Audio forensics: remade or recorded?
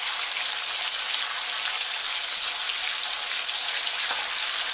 recorded